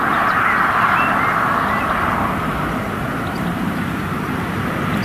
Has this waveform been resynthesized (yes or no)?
no